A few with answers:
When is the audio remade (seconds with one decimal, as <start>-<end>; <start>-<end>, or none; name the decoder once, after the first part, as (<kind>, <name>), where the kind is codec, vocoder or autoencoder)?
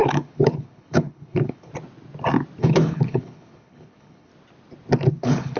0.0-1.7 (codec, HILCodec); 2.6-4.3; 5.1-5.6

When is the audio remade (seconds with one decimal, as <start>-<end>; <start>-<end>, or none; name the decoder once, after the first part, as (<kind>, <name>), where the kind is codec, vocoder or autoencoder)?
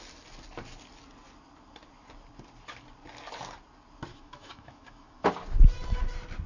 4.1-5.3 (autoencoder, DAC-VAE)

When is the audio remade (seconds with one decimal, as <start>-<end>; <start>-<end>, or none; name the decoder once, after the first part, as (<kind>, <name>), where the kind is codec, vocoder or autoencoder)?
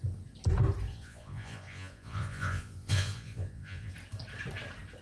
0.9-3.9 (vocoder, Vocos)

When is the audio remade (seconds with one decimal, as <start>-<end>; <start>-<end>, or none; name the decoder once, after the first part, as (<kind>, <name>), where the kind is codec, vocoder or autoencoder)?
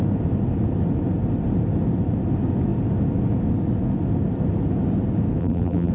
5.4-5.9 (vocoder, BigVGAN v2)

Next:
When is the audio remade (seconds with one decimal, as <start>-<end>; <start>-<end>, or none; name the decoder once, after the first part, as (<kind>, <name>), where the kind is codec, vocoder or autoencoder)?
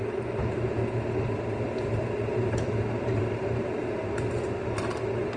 1.9-4.0 (vocoder, BigVGAN v2)